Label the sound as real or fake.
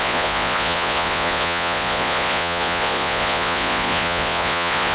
fake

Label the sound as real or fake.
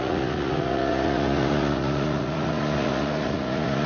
fake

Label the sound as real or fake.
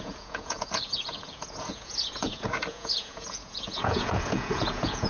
fake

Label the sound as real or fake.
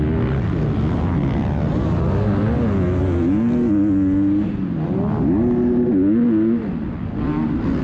real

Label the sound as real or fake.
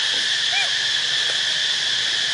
real